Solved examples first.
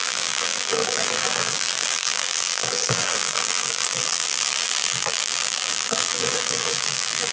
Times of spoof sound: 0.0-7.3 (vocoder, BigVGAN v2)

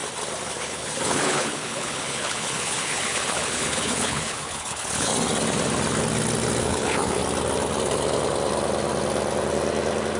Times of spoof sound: 0.6-5.1 (codec, HILCodec); 6.6-7.2

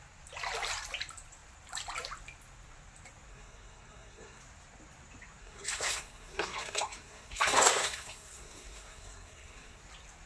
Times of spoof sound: 3.3-4.4 (codec, SNAC); 5.4-9.8

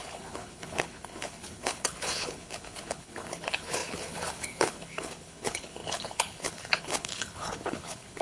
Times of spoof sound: 0.0-8.2 (codec, HILCodec)